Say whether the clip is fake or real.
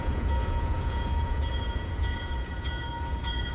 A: fake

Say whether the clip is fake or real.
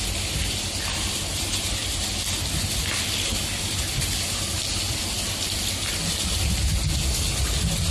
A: real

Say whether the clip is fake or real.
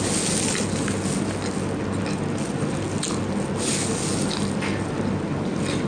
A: real